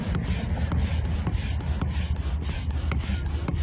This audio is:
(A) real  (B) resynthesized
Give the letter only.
A